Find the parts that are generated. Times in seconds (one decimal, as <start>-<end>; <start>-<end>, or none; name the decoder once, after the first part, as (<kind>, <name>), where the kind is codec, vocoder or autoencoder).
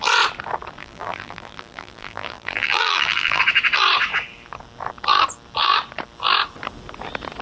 0.8-3.4 (vocoder, BigVGAN v2)